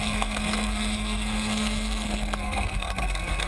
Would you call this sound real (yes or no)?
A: no